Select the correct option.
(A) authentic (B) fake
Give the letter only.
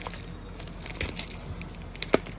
A